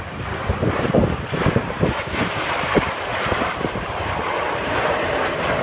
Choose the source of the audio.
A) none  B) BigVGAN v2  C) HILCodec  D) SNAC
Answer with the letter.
B